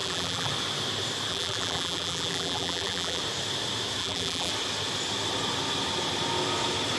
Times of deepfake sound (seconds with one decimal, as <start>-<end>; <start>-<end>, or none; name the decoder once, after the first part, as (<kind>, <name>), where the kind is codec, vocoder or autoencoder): 0.0-0.5 (vocoder, BigVGAN v2); 1.3-3.2; 4.0-4.5